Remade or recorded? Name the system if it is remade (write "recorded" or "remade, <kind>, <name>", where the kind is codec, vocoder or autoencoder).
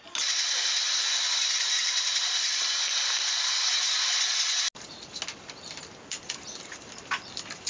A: recorded